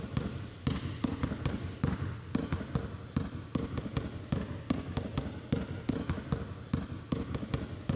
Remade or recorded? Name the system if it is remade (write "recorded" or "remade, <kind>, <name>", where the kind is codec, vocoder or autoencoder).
recorded